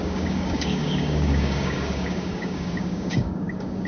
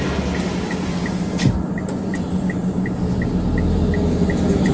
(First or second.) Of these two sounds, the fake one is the first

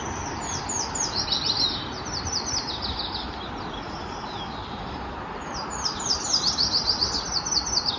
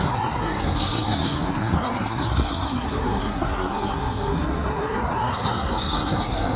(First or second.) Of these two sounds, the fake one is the second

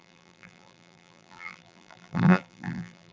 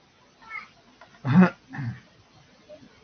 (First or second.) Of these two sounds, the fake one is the first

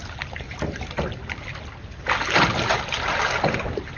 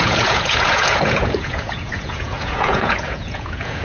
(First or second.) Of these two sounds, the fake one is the second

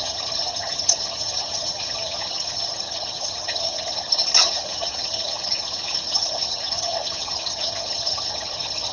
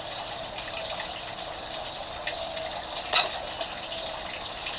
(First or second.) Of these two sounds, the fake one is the first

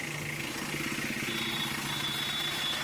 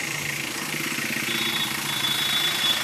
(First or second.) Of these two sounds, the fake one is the second